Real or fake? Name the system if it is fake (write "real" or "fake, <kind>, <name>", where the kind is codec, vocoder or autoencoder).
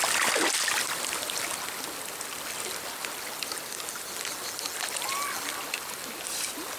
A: real